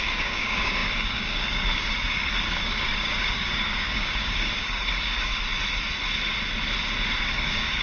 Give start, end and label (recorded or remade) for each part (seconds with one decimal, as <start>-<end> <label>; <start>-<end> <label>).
0.0-5.3 remade; 5.3-7.2 recorded; 7.2-7.8 remade